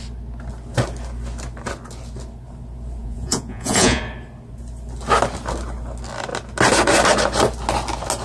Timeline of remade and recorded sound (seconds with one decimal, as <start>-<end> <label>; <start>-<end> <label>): 0.0-3.0 recorded; 3.0-4.0 remade; 4.0-8.2 recorded